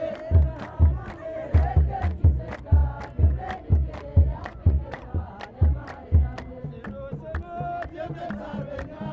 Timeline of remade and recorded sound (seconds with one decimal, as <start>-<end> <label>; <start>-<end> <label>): 0.0-4.3 recorded; 4.3-5.3 remade; 5.3-9.1 recorded